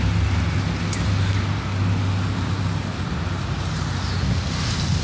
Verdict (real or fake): real